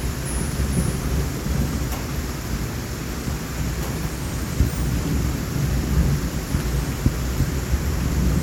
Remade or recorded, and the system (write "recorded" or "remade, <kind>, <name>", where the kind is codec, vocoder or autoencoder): recorded